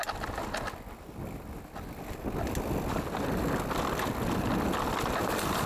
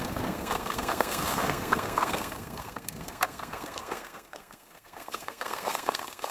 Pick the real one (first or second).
first